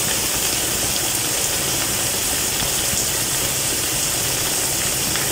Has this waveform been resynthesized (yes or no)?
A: no